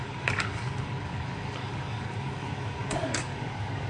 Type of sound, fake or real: fake